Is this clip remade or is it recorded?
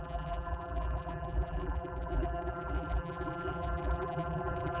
remade